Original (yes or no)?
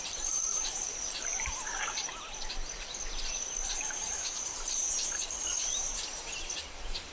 no